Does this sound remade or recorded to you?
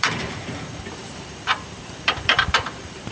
remade